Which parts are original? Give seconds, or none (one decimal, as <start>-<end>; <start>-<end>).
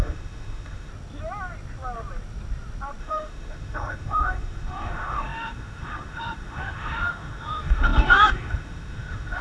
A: 0.9-3.0